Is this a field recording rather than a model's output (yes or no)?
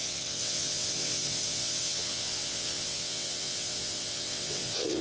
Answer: no